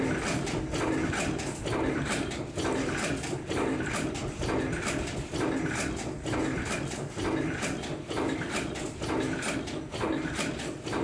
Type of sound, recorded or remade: recorded